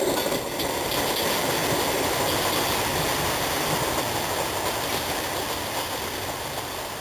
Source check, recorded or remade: recorded